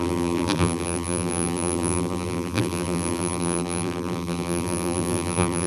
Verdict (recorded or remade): remade